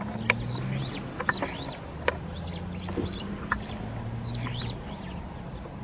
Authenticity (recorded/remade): recorded